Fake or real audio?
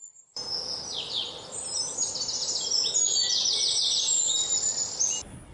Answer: real